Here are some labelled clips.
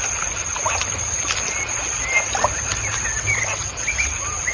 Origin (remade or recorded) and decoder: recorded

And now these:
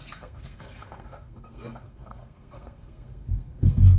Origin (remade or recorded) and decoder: remade, codec, SNAC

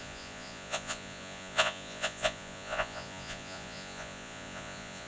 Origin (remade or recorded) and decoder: remade, vocoder, Vocos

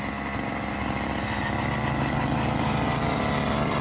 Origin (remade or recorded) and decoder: recorded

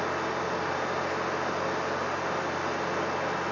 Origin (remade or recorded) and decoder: recorded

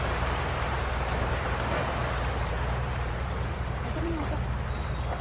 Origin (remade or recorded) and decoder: remade, vocoder, BigVGAN v2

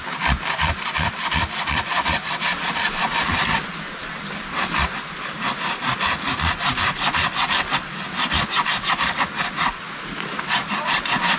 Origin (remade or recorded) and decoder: recorded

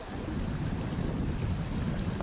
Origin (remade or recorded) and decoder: recorded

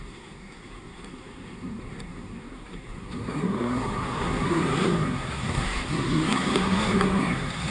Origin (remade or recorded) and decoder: remade, codec, SNAC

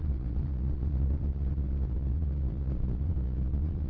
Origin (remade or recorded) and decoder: remade, vocoder, Vocos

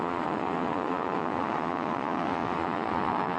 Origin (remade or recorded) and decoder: remade, vocoder, Vocos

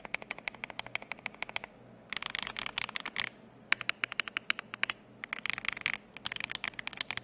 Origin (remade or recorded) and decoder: recorded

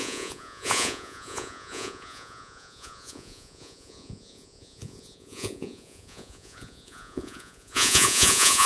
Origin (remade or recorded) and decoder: remade, vocoder, Vocos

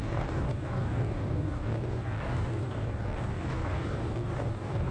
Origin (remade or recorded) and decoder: remade, codec, DAC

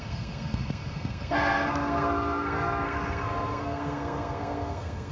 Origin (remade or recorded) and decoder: remade, codec, SNAC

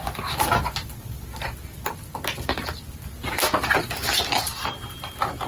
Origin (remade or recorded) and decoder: recorded